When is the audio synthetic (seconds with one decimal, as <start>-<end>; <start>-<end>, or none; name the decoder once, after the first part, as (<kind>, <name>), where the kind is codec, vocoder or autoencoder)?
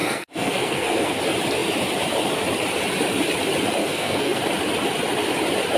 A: 0.0-1.2 (codec, SNAC); 3.8-4.4